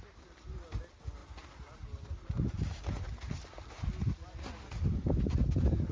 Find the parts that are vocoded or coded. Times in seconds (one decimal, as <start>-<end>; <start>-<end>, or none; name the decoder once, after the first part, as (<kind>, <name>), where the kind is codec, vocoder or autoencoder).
none